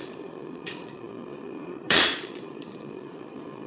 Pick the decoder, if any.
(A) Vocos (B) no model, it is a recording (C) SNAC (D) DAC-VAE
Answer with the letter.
A